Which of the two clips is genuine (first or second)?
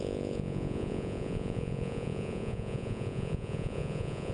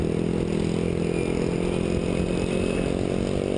second